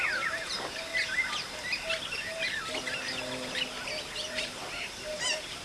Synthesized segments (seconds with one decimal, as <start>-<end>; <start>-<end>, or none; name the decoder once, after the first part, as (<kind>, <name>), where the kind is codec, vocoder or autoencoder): 0.0-0.9 (vocoder, BigVGAN v2); 4.3-5.6